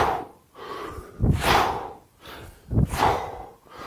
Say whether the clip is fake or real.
real